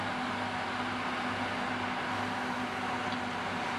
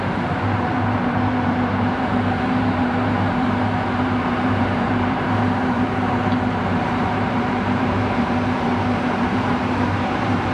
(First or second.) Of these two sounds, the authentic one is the first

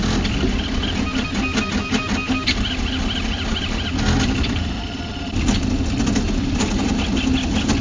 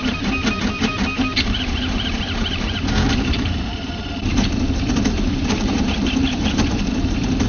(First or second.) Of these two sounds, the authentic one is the first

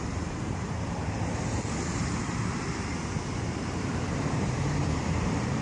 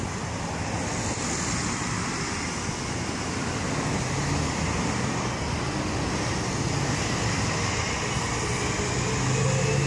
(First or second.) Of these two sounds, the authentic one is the second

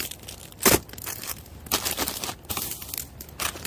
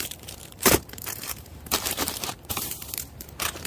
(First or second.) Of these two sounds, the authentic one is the first